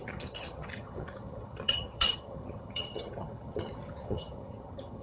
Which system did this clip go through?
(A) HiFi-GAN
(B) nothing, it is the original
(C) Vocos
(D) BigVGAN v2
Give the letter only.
A